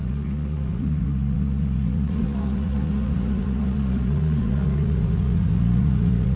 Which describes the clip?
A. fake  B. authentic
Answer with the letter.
A